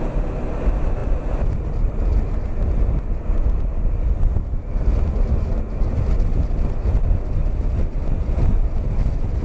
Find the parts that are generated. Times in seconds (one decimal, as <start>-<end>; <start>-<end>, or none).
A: none